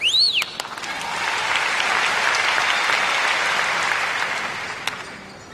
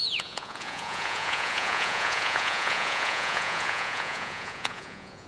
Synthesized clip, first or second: second